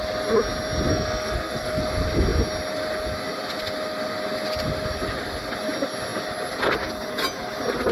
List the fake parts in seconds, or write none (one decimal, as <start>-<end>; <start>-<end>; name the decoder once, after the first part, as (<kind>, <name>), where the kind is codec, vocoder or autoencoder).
0.9-1.8 (codec, SNAC)